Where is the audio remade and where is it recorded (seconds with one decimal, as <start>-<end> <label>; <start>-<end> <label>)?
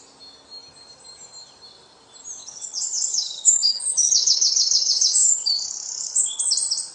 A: 0.0-2.4 recorded; 2.4-6.5 remade; 6.5-6.9 recorded